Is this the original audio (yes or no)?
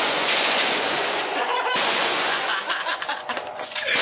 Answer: no